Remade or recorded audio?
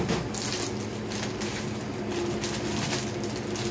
recorded